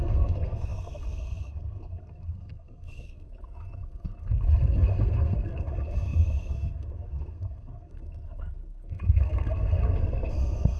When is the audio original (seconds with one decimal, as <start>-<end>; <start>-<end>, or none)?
none